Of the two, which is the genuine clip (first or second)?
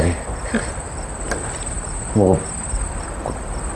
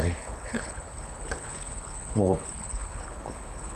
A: first